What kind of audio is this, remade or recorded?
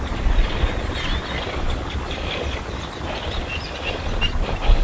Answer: recorded